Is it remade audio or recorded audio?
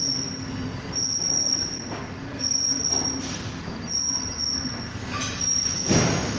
recorded